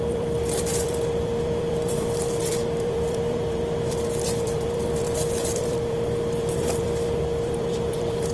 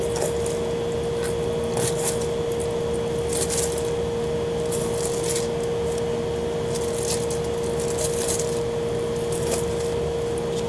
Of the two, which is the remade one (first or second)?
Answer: first